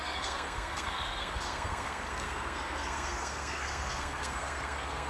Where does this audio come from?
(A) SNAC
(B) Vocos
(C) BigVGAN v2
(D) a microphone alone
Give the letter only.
A